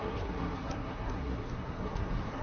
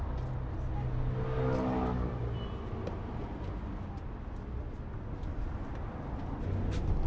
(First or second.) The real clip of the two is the second